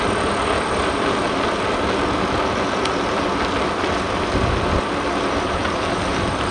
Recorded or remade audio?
recorded